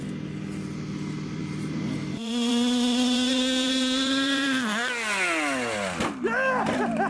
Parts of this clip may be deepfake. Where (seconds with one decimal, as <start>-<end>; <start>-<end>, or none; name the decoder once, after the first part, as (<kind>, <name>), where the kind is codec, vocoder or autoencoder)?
1.4-4.6 (vocoder, BigVGAN v2)